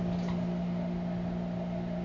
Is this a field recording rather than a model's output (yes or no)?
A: yes